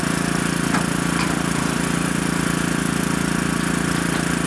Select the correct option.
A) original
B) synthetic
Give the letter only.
A